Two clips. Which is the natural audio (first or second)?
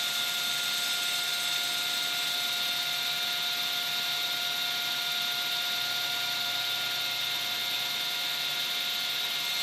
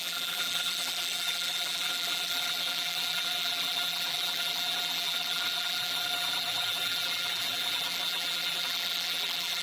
first